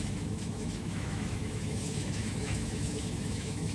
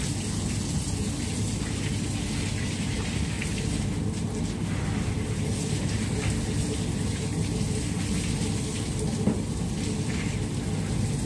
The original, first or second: second